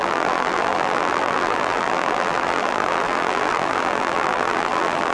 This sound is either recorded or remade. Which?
remade